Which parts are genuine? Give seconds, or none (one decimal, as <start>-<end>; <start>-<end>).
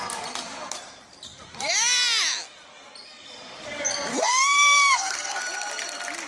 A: 0.0-4.1; 5.4-6.3